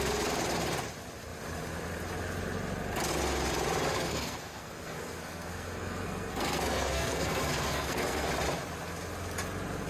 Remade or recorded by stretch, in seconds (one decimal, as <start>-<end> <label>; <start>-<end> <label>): 0.0-3.9 recorded; 3.9-8.3 remade; 8.3-9.9 recorded